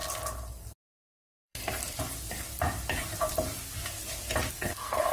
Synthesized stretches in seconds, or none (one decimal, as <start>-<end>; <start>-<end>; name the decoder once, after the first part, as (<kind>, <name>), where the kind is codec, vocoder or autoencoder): 0.9-1.6 (codec, SNAC); 4.5-5.1